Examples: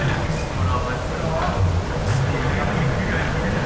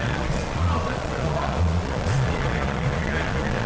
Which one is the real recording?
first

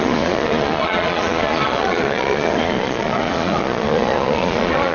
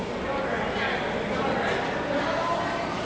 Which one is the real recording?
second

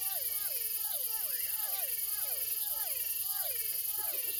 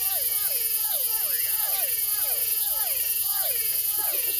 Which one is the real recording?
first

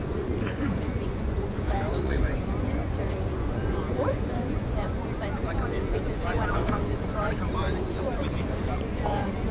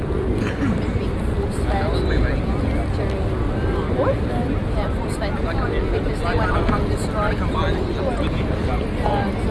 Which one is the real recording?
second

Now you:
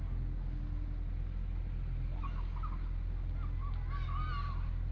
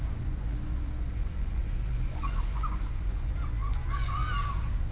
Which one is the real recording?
first